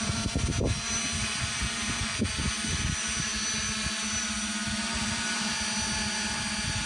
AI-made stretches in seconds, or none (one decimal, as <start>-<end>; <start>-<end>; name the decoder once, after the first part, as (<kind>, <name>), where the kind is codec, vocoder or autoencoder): none